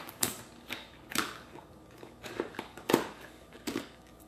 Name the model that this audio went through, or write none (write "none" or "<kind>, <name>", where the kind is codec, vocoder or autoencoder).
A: codec, DAC